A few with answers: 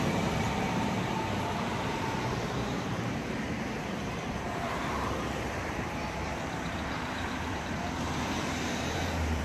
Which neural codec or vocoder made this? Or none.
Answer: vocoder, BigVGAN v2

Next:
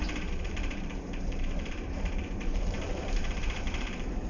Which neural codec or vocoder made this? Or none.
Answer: vocoder, BigVGAN v2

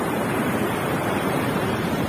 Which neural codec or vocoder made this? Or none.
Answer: vocoder, BigVGAN v2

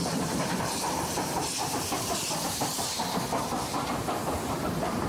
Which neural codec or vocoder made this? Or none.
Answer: vocoder, BigVGAN v2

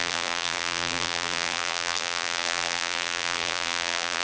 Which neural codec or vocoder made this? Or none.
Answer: vocoder, BigVGAN v2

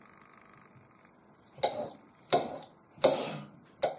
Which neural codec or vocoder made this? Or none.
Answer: none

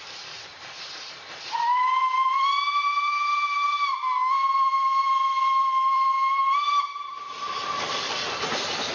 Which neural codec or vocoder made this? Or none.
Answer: vocoder, BigVGAN v2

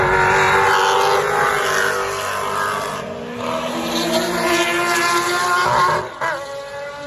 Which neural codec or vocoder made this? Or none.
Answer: none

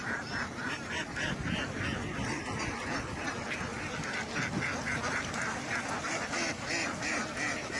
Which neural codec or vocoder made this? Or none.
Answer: vocoder, BigVGAN v2